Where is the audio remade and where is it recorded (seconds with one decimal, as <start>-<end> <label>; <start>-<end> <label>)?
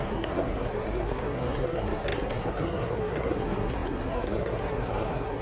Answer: 0.0-5.4 remade